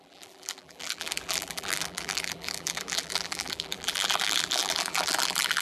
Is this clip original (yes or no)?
no